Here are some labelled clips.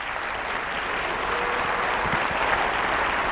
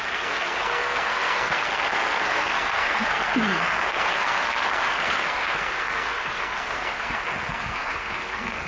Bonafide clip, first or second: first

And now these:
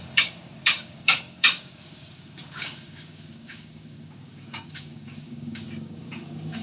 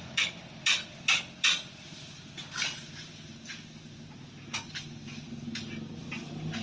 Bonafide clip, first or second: second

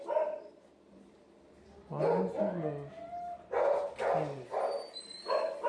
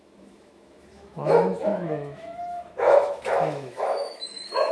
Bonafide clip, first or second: first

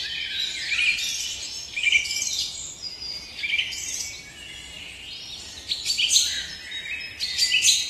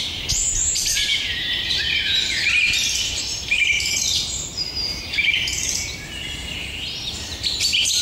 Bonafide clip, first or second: first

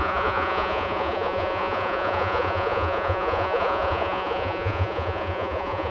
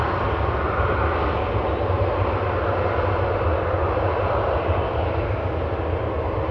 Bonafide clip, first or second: second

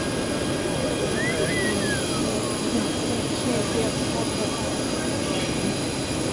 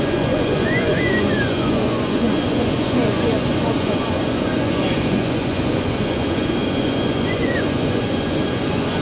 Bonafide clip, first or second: first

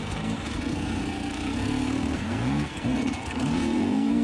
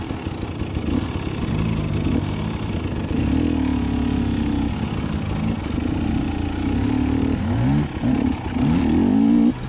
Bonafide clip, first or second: second